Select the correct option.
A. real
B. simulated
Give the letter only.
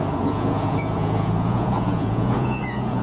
B